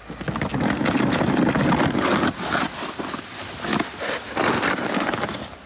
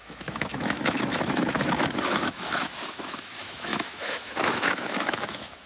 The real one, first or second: first